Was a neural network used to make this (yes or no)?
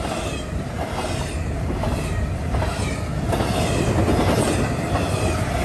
no